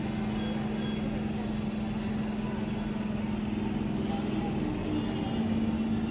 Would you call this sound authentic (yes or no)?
yes